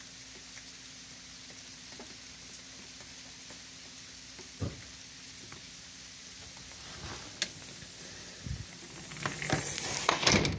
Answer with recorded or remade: recorded